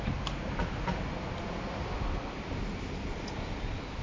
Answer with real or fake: real